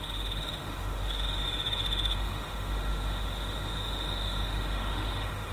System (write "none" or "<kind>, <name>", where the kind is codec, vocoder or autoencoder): autoencoder, DAC-VAE